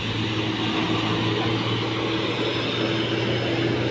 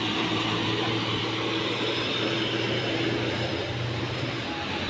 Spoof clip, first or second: second